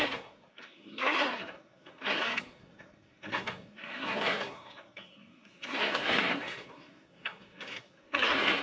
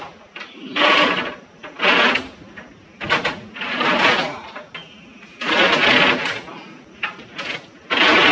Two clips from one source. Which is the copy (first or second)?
first